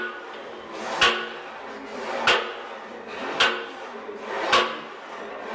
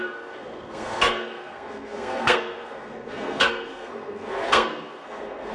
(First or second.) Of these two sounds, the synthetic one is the second